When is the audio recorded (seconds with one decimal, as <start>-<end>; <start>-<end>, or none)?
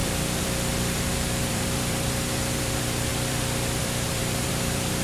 none